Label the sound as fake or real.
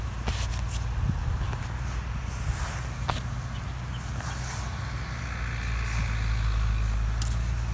real